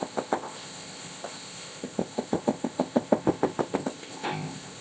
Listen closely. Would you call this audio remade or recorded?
remade